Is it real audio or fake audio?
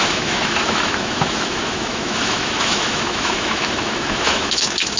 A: fake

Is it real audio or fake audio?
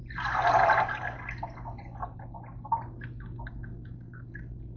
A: real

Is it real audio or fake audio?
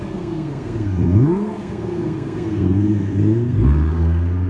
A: fake